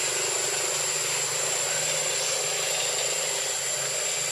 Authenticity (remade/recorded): recorded